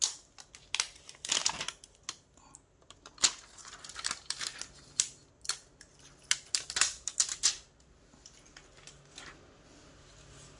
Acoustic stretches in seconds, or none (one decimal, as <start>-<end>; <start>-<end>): 0.0-10.6